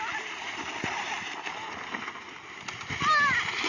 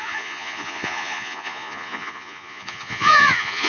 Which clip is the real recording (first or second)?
first